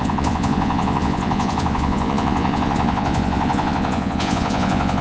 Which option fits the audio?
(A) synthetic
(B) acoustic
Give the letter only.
A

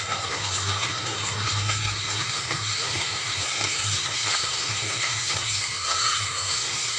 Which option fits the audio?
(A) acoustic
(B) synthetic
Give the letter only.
B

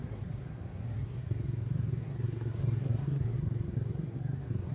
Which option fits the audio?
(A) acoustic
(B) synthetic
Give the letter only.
B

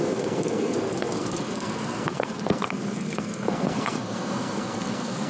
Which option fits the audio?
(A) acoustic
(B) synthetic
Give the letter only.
B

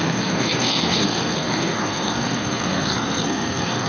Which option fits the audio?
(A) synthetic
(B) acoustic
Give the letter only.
A